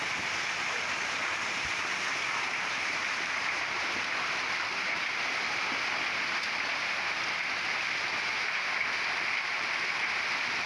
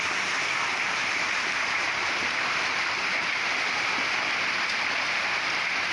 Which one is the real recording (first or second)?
first